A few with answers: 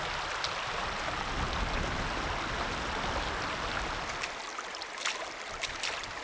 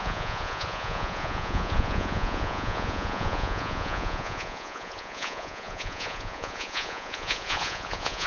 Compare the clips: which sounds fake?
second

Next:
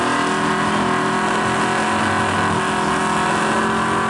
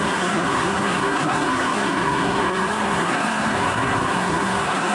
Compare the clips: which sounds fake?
second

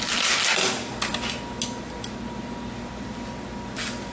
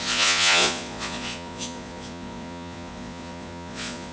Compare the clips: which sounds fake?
second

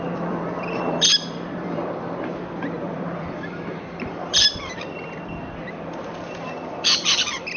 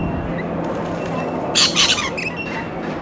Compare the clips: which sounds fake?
first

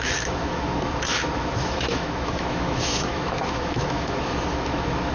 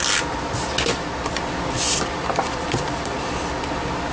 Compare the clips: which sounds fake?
first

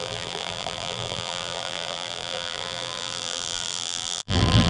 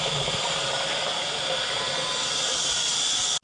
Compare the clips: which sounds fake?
first